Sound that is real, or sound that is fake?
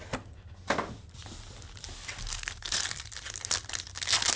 real